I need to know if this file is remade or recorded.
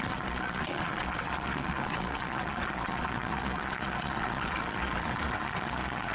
remade